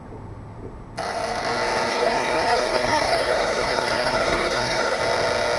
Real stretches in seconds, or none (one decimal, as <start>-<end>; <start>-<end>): 0.0-1.9; 5.0-5.6